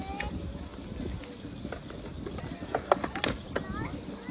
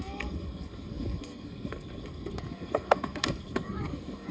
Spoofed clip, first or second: second